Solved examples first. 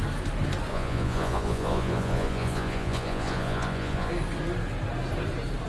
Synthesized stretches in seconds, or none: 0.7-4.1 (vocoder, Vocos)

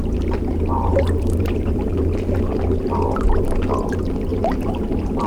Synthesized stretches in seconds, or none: 0.9-2.5 (vocoder, BigVGAN v2); 4.3-4.8

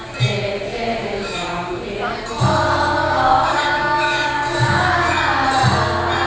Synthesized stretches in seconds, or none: 1.0-1.7 (codec, DAC); 3.0-5.1

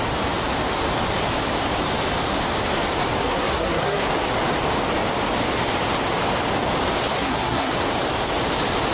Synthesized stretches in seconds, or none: 3.2-4.0 (codec, SNAC); 7.1-7.7

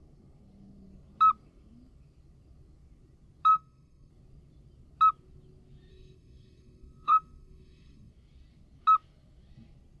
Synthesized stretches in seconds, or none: 3.5-4.1 (codec, SNAC); 5.9-8.1

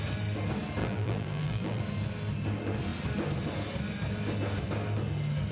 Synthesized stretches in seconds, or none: 0.8-1.8 (vocoder, BigVGAN v2)

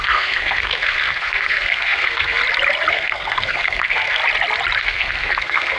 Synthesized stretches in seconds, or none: 0.0-2.4 (codec, SNAC); 2.9-4.2; 4.8-5.8

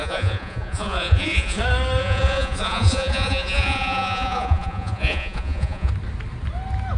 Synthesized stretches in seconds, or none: 0.0-1.6 (vocoder, Vocos); 2.0-5.9